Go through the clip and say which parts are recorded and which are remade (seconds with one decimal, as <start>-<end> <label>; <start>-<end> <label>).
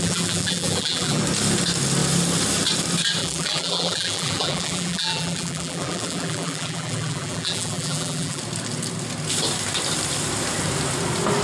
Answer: 0.0-1.2 remade; 1.2-3.2 recorded; 3.2-8.4 remade; 8.4-11.4 recorded